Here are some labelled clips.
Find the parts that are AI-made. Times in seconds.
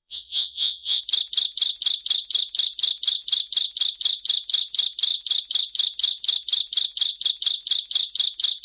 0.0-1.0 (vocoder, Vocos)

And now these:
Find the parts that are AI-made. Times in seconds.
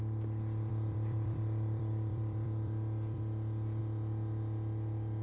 0.7-3.8 (vocoder, BigVGAN v2)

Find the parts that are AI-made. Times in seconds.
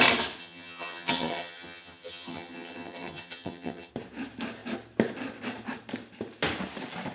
0.4-3.9 (vocoder, HiFi-GAN)